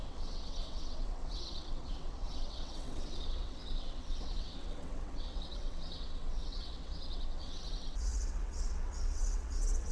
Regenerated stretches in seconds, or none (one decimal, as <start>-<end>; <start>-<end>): 0.0-9.9